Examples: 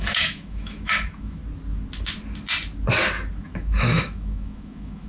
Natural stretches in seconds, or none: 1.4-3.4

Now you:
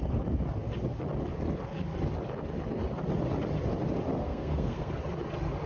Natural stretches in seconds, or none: 0.0-4.2; 4.9-5.7